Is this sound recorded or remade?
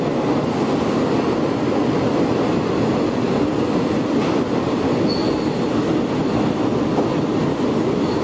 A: recorded